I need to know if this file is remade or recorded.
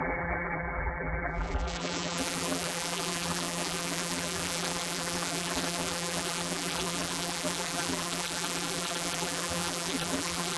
remade